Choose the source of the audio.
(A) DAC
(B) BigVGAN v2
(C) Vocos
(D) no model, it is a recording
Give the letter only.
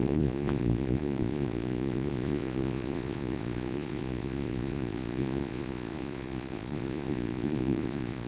C